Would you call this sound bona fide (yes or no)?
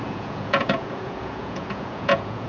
no